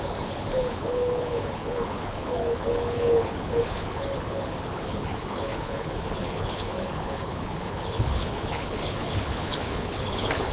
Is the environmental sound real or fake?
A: fake